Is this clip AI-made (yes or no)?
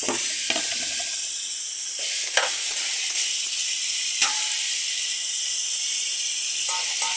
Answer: no